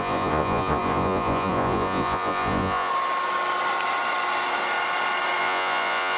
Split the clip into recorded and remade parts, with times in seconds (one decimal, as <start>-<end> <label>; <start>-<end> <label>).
0.0-2.9 remade; 2.9-5.4 recorded; 5.4-6.2 remade